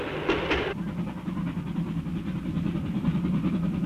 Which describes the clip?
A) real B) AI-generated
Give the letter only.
A